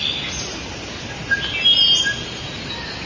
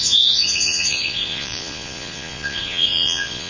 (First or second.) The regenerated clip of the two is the second